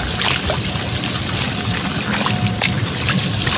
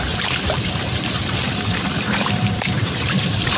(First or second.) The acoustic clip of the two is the first